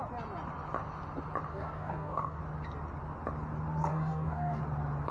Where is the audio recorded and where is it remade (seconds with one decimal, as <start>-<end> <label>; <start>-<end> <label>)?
0.0-1.5 recorded; 1.5-2.4 remade; 2.4-3.9 recorded; 3.9-4.6 remade; 4.6-5.1 recorded